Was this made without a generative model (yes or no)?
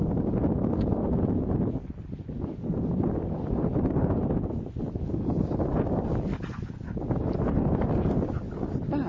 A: yes